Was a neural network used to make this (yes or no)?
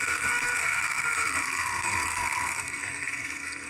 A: yes